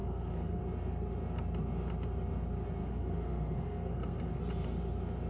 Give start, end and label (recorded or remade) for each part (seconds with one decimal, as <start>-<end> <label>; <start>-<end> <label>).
0.0-0.6 remade; 0.6-2.8 recorded; 2.8-4.4 remade; 4.4-5.3 recorded